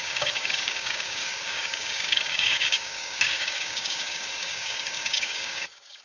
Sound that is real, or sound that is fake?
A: fake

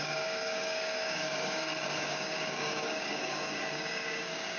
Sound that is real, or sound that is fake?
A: fake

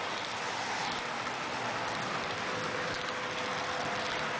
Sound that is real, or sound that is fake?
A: real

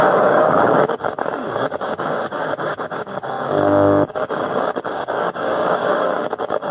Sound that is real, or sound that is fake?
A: fake